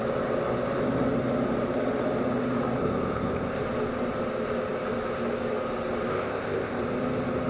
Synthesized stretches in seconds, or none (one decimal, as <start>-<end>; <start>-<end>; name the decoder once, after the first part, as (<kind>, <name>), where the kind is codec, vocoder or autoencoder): 2.8-3.6 (codec, ZipCodec); 6.1-6.8